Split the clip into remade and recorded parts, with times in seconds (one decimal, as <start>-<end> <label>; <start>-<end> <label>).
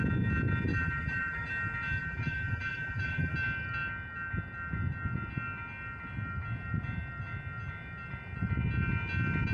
0.0-0.7 recorded; 0.7-1.5 remade; 1.5-2.0 recorded; 2.0-3.3 remade; 3.3-9.5 recorded